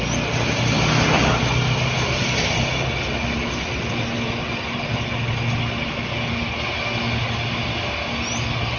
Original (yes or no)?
yes